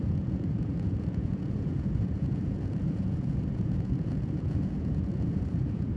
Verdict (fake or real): fake